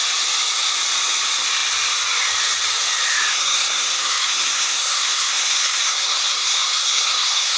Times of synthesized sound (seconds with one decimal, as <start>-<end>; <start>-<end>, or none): 3.3-7.6